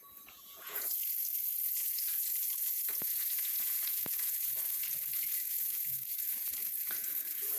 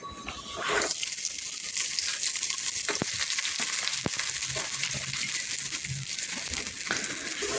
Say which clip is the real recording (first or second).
second